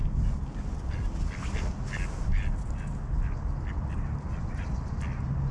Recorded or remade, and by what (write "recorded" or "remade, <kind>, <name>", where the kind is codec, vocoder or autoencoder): recorded